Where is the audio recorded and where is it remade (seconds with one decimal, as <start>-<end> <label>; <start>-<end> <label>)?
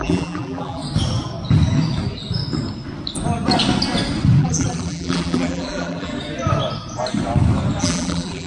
0.0-0.8 remade; 0.8-4.4 recorded; 4.4-6.1 remade; 6.1-7.8 recorded; 7.8-8.5 remade